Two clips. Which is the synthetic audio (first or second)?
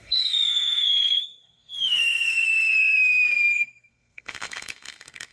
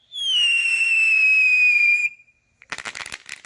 first